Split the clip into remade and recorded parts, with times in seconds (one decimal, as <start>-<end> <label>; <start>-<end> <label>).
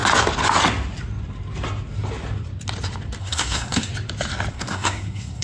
0.0-3.2 recorded; 3.2-3.9 remade; 3.9-4.5 recorded; 4.5-5.4 remade